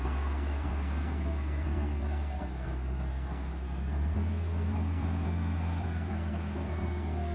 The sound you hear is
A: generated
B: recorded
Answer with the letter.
A